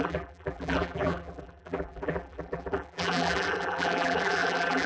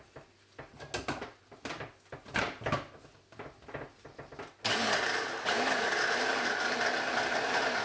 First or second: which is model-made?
first